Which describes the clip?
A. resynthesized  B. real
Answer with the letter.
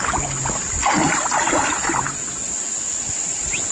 B